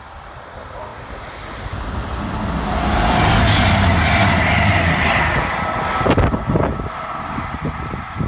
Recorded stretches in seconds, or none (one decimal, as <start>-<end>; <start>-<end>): 0.0-8.3